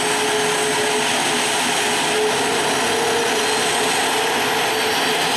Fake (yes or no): no